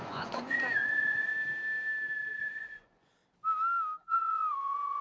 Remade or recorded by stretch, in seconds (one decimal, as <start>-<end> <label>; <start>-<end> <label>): 0.0-1.3 remade; 1.3-2.4 recorded; 2.4-3.2 remade; 3.2-4.0 recorded; 4.0-5.0 remade